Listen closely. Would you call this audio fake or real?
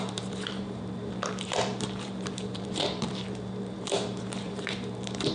fake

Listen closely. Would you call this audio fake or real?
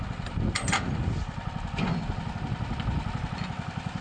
real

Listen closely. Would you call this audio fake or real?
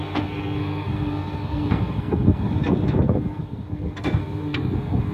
fake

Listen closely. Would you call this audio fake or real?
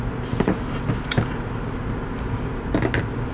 real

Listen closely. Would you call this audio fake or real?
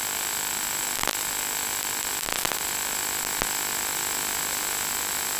real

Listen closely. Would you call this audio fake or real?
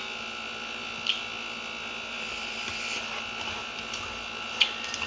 real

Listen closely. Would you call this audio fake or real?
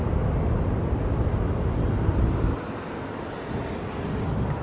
real